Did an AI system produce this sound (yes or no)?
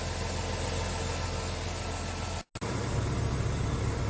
no